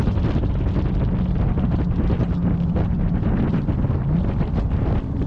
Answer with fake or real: real